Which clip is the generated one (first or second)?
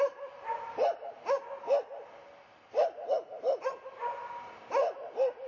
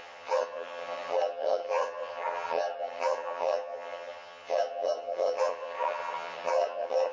second